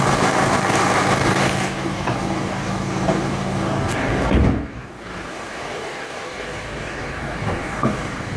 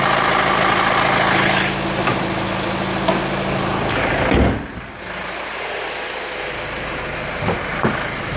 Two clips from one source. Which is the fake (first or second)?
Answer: first